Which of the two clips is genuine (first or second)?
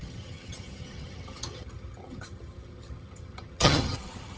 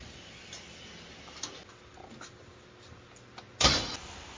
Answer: second